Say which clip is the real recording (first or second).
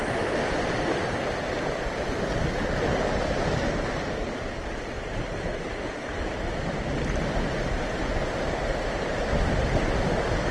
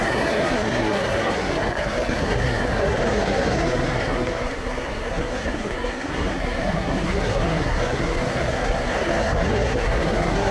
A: first